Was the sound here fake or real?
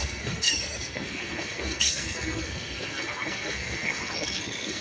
fake